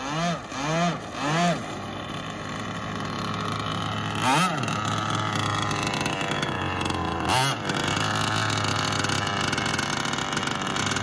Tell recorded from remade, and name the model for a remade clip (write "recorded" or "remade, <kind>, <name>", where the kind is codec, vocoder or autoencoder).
recorded